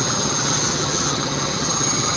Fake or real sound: fake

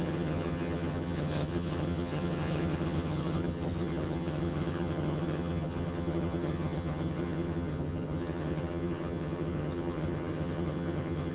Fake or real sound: fake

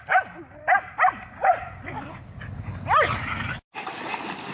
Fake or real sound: real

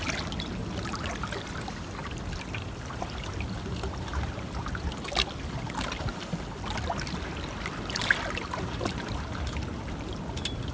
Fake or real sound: real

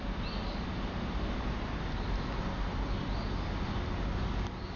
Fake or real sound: real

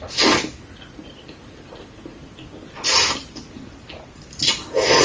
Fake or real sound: real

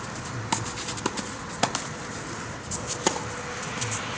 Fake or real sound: real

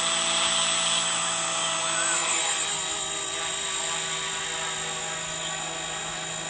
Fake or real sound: real